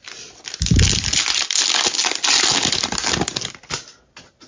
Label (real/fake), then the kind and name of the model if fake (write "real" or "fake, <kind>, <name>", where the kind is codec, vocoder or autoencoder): real